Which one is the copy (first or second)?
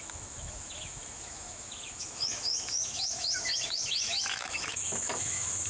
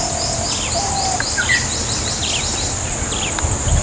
first